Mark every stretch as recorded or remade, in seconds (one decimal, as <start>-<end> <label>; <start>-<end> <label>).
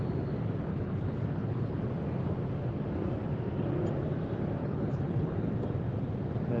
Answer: 0.0-0.7 recorded; 0.7-1.8 remade; 1.8-4.6 recorded; 4.6-5.5 remade; 5.5-6.6 recorded